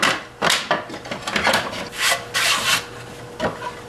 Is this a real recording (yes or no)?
yes